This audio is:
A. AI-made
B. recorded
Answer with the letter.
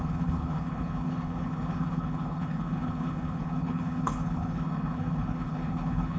A